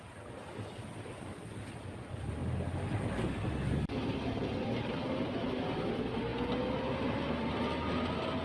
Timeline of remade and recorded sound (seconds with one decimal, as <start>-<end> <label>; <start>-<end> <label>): 0.0-8.4 recorded